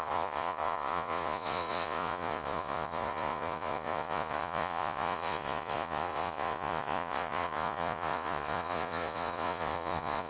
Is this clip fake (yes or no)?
yes